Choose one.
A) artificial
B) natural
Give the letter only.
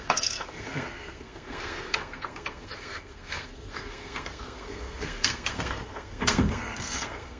A